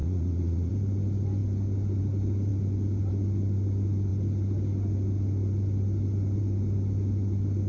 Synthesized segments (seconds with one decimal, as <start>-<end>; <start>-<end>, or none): 0.0-0.7